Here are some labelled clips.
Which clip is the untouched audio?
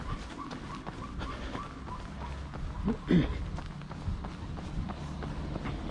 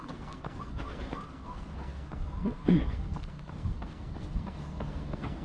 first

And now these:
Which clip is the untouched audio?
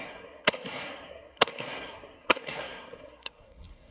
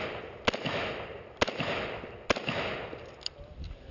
second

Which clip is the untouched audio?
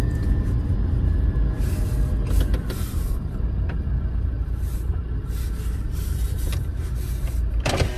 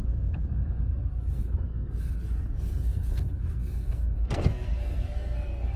first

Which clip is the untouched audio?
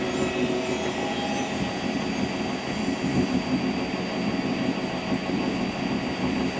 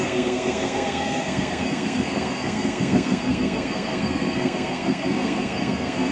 first